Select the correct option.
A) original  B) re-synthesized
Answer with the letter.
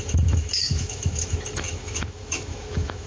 B